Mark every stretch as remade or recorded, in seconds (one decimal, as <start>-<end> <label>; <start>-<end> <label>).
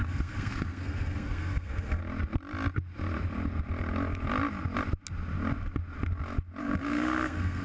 0.0-2.0 remade; 2.0-6.6 recorded; 6.6-7.6 remade